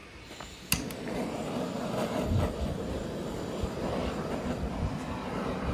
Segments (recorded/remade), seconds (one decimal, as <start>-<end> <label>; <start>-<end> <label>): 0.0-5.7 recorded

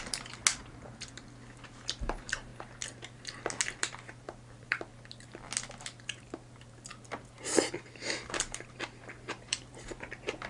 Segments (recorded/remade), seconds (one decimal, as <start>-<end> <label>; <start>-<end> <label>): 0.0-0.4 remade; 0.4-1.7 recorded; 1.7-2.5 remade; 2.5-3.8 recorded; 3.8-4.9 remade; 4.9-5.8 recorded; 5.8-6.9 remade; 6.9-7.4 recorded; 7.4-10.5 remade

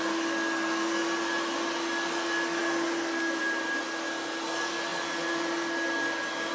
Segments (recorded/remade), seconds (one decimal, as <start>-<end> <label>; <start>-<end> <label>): 0.0-6.5 recorded

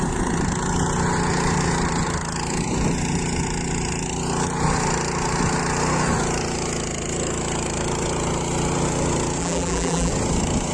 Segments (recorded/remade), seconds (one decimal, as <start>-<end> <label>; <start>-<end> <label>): 0.0-9.4 recorded; 9.4-10.1 remade; 10.1-10.7 recorded